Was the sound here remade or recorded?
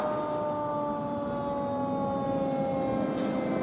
recorded